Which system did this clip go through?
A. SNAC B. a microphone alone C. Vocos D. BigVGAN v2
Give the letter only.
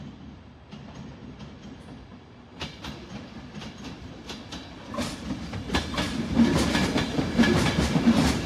B